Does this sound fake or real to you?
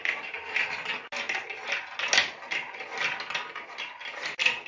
real